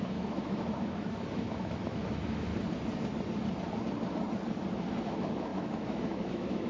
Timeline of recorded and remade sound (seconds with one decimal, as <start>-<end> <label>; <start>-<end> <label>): 0.0-2.5 remade; 2.5-5.0 recorded; 5.0-6.7 remade